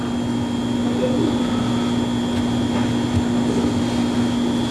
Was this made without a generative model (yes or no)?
yes